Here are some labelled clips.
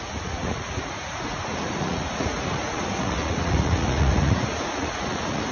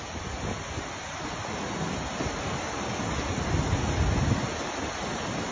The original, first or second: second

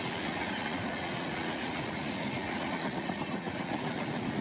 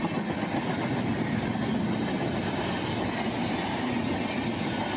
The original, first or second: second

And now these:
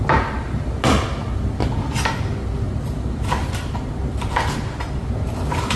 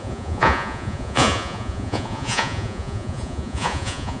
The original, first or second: first